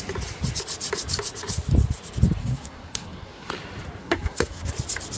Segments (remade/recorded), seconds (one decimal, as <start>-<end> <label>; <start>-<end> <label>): 0.0-2.4 recorded; 2.4-3.5 remade; 3.5-4.0 recorded; 4.0-4.7 remade; 4.7-5.2 recorded